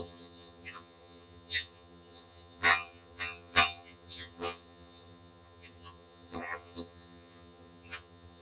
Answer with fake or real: fake